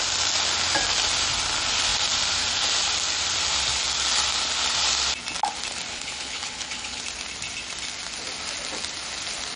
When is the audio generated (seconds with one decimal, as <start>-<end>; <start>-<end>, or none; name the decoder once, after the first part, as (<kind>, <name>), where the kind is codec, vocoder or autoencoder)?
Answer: 5.9-7.0 (codec, HILCodec)